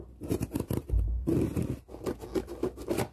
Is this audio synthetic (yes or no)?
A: no